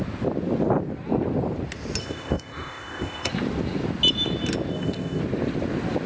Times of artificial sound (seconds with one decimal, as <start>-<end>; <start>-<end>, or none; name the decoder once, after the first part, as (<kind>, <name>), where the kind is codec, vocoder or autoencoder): 2.0-3.3 (codec, ZipCodec); 4.7-5.2